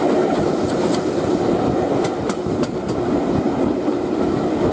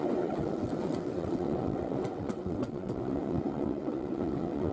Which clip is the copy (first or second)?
second